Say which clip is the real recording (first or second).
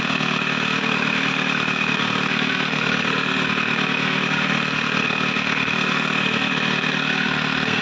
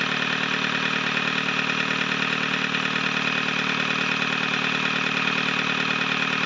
second